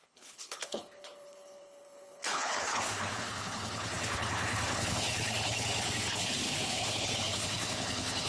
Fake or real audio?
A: fake